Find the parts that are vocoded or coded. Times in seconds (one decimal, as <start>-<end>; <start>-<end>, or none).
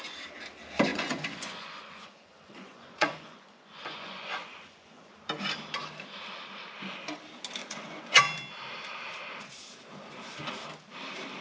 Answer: 0.9-5.1; 7.6-8.2